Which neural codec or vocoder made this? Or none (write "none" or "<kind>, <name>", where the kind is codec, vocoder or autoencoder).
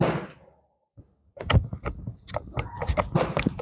none